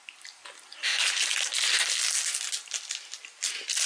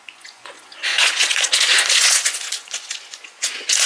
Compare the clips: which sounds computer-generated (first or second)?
second